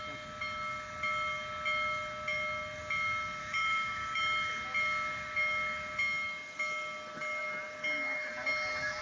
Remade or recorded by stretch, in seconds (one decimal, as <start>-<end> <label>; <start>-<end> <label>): 0.0-3.4 recorded; 3.4-4.2 remade; 4.2-9.0 recorded